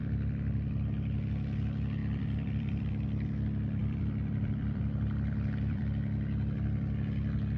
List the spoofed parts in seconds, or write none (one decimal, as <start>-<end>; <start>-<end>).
2.0-2.9; 3.8-5.8